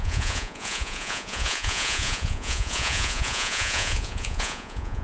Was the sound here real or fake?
fake